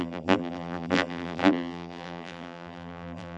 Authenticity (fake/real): fake